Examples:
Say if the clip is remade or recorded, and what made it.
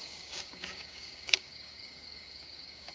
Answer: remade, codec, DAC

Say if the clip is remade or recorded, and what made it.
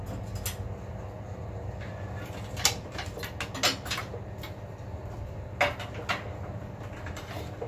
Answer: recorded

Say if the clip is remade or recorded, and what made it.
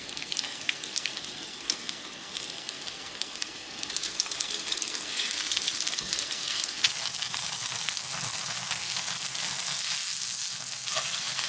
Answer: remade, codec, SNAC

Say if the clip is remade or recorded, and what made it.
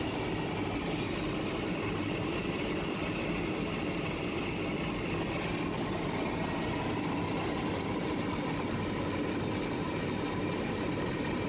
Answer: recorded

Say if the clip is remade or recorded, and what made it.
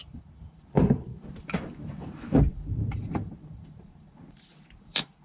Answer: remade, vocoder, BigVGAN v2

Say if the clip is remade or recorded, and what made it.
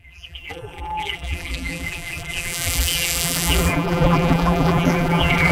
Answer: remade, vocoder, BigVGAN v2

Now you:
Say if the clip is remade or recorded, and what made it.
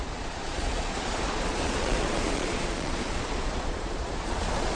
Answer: remade, vocoder, Vocos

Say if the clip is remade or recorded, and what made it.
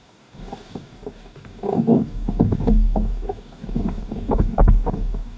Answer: remade, codec, DAC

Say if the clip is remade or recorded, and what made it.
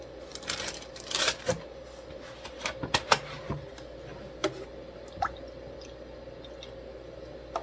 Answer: recorded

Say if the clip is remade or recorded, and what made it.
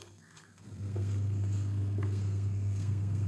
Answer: remade, codec, SNAC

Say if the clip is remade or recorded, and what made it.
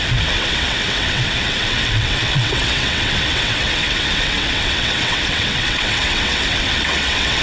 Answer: remade, vocoder, WaveNeXt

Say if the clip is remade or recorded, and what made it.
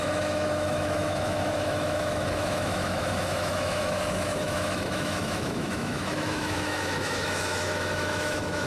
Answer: remade, autoencoder, DAC-VAE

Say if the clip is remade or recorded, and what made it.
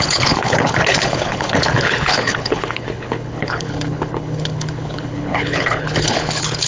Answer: remade, codec, HILCodec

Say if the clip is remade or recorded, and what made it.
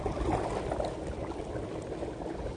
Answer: recorded